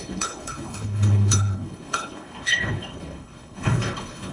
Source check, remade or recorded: remade